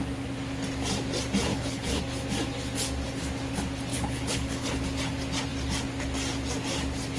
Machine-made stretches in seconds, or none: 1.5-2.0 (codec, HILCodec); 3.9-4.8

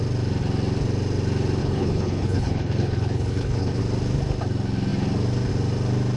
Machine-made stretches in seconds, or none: 1.6-3.8 (codec, HILCodec)

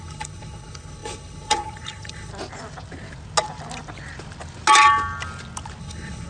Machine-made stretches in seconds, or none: 0.0-2.3 (codec, HILCodec); 5.8-6.3

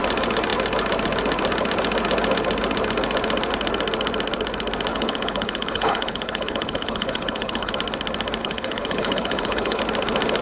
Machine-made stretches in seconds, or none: 4.9-7.7 (codec, HILCodec); 8.4-9.8

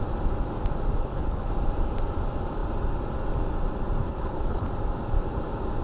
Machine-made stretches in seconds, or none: 1.0-1.5 (codec, HILCodec); 4.0-4.7

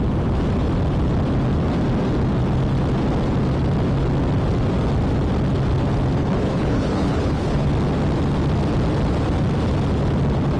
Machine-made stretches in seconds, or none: 6.2-7.7 (codec, HILCodec)